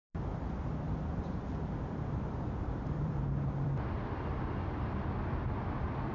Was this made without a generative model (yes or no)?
no